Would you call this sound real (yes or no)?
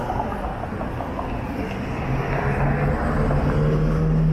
yes